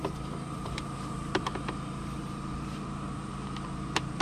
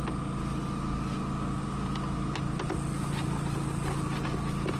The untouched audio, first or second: second